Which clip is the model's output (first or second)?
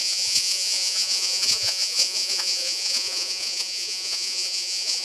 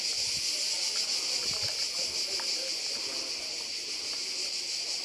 first